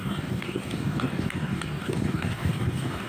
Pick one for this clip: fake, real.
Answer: fake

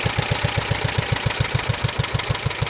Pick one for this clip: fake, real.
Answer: real